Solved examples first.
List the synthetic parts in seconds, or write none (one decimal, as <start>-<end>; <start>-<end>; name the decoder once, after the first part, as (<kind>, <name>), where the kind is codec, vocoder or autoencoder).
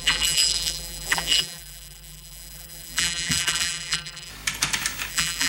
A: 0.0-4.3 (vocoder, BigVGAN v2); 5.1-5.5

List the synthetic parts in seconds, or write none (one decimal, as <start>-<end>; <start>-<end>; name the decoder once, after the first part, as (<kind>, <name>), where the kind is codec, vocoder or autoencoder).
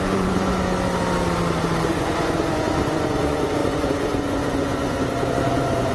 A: 0.0-0.5 (vocoder, Vocos); 1.9-5.9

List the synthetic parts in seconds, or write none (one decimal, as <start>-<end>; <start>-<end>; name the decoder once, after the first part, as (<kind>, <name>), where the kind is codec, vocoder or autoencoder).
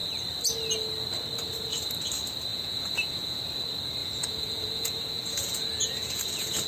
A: 2.5-3.4 (vocoder, Vocos); 4.0-6.7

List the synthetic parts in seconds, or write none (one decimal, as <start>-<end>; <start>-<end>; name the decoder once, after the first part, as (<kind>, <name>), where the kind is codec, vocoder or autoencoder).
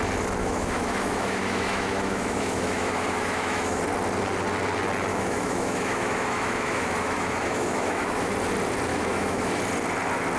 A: 0.4-3.8 (autoencoder, DAC-VAE); 5.1-8.3; 8.9-9.6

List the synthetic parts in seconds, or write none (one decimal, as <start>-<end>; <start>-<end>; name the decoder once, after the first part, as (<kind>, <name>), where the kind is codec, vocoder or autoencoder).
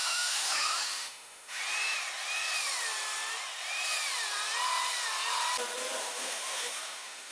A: 0.0-1.6 (autoencoder, DAC-VAE); 6.0-7.3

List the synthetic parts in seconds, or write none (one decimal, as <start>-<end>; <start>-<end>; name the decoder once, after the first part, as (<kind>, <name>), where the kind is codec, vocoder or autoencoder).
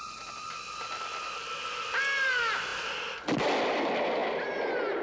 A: 0.0-5.0 (vocoder, BigVGAN v2)